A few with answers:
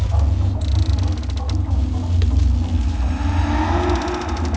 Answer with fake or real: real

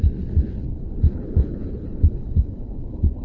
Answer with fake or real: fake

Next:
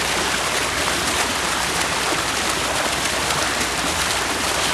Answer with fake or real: fake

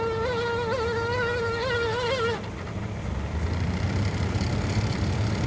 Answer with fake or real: real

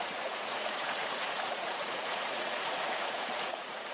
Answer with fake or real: fake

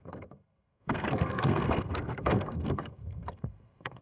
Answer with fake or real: fake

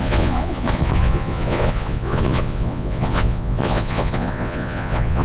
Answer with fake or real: fake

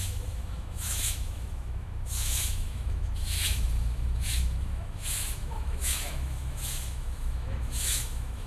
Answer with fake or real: fake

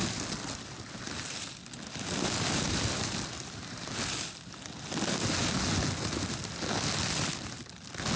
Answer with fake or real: real